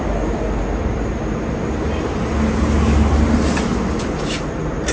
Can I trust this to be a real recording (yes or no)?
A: yes